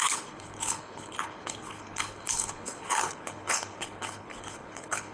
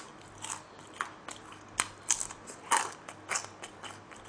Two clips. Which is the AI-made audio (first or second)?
first